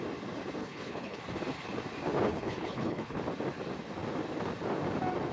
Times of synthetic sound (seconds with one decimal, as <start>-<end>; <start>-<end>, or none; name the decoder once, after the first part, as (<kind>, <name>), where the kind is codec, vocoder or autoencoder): 0.6-1.2 (codec, HILCodec); 2.3-3.2